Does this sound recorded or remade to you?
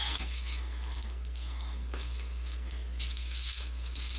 remade